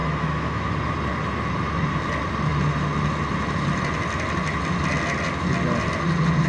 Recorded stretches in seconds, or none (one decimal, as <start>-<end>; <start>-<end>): 0.7-6.5